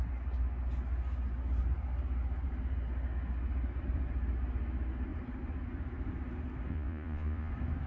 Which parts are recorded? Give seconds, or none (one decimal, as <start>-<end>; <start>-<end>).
0.0-6.7; 7.5-7.9